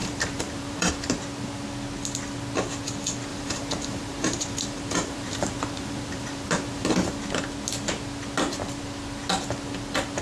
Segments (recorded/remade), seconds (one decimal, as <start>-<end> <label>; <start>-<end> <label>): 0.0-0.9 remade; 0.9-3.3 recorded; 3.3-6.9 remade; 6.9-10.2 recorded